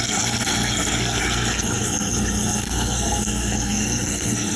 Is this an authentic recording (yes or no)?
no